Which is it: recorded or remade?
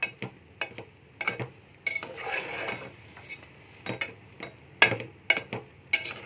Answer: recorded